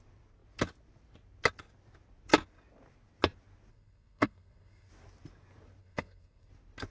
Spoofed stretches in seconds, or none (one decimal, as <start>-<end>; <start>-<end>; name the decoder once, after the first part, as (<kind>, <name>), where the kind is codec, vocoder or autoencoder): 3.7-4.9 (codec, SNAC); 5.8-6.5

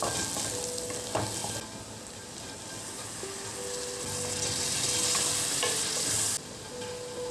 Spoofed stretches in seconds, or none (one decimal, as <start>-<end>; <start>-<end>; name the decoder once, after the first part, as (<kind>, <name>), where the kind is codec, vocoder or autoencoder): none